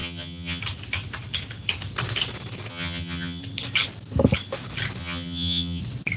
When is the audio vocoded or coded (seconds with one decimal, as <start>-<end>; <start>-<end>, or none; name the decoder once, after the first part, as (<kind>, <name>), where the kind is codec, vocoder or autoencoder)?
0.0-0.6 (vocoder, HiFi-GAN); 2.7-3.4; 5.0-5.8